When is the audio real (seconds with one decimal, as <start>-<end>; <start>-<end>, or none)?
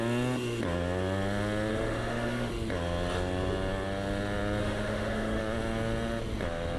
0.0-1.7; 2.5-4.6; 5.4-6.8